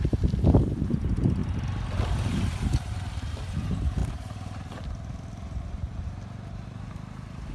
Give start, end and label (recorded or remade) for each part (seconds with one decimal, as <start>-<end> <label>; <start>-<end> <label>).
0.0-1.4 remade; 1.4-2.3 recorded; 2.3-7.5 remade